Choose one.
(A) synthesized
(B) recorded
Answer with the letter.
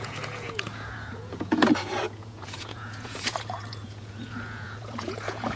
A